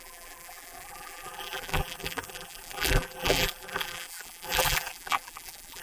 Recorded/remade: remade